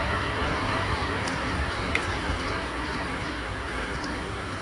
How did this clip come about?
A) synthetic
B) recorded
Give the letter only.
A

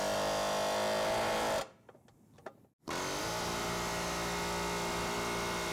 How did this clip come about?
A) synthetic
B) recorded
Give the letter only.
B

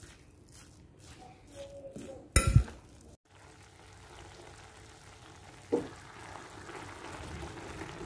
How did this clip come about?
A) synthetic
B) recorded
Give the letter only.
B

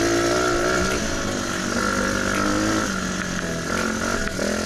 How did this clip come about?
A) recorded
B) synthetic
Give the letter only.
A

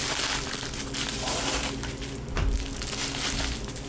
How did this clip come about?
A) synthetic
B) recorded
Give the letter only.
B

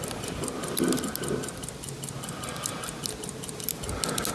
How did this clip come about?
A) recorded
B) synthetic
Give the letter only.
A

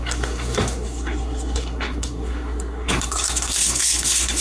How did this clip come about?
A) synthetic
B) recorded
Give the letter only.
A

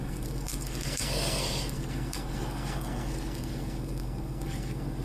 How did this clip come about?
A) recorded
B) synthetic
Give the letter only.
B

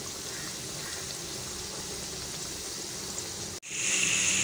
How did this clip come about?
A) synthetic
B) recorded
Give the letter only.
B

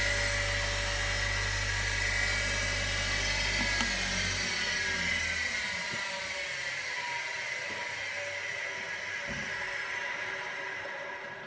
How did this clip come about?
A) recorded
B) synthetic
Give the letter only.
A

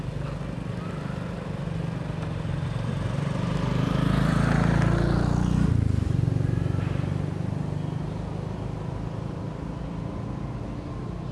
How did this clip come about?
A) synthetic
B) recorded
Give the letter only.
B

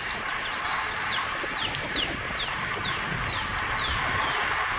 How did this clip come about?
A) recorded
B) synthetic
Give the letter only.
A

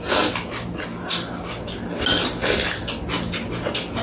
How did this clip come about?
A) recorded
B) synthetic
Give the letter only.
A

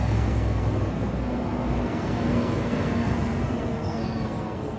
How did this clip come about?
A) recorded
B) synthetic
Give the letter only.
B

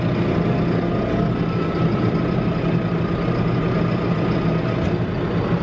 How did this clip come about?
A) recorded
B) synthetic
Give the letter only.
A